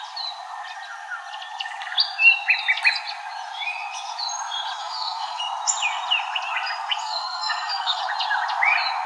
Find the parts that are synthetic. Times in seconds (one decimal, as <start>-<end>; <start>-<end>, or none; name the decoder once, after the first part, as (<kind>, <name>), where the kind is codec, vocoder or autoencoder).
4.8-5.4 (codec, SNAC); 7.0-8.0